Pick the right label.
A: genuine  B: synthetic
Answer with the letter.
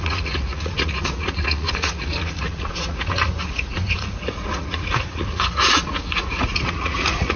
B